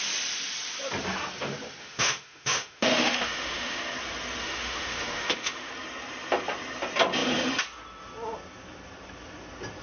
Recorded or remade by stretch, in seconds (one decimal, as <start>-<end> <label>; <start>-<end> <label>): 0.0-1.8 recorded; 1.8-3.8 remade; 3.8-4.4 recorded; 4.4-5.7 remade; 5.7-9.8 recorded